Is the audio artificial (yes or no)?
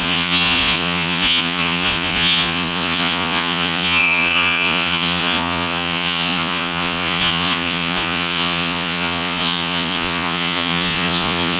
yes